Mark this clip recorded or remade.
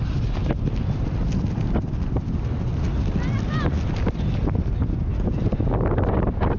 recorded